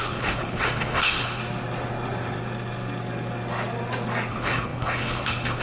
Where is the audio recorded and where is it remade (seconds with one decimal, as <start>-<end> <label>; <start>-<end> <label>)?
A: 0.0-1.4 remade; 1.4-4.3 recorded; 4.3-5.6 remade